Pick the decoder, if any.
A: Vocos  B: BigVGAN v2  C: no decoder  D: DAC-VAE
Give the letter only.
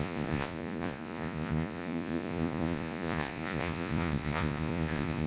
A